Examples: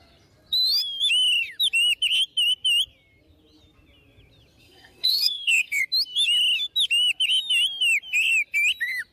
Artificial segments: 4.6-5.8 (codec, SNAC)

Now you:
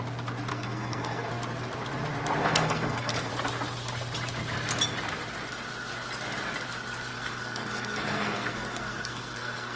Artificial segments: 0.5-1.3 (codec, SNAC); 2.4-3.3; 7.1-9.8

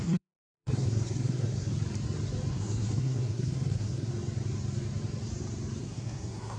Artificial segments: 0.0-1.7 (codec, SNAC); 2.5-4.1; 5.8-6.6

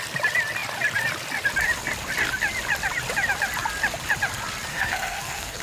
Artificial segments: 4.7-5.6 (codec, SNAC)

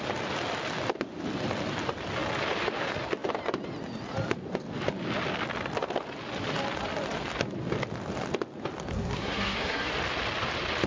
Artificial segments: 8.9-9.9 (codec, SNAC)

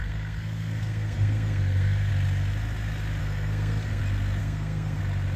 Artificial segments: 0.0-2.1 (codec, SNAC); 3.2-4.0; 4.4-5.0

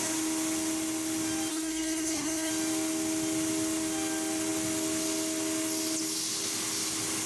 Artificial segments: 1.5-2.5 (codec, SNAC)

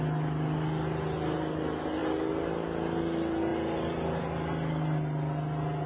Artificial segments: none